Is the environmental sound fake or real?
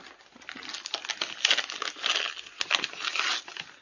real